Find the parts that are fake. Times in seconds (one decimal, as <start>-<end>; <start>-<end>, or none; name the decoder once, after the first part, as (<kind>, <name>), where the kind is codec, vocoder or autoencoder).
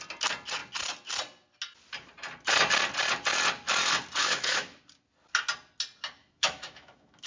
4.2-4.8 (autoencoder, DAC-VAE); 6.2-7.3